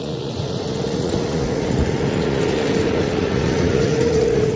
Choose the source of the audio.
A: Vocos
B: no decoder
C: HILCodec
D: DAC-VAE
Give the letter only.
A